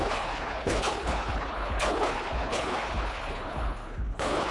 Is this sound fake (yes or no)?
yes